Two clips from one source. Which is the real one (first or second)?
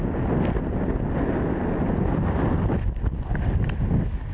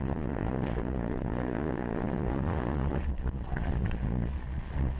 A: first